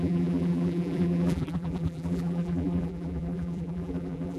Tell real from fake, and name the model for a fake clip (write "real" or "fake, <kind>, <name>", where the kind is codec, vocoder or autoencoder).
fake, vocoder, BigVGAN v2